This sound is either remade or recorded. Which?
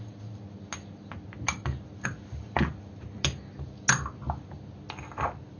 recorded